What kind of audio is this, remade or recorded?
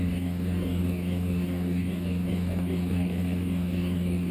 remade